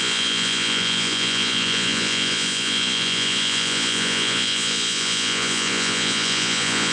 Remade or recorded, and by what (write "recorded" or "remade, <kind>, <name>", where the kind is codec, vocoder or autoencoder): remade, vocoder, Vocos